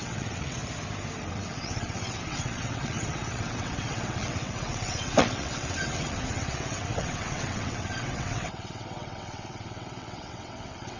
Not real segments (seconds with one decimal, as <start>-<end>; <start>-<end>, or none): 0.0-0.6; 1.3-11.0